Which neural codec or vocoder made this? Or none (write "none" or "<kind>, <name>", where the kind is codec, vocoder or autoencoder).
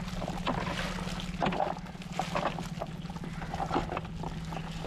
none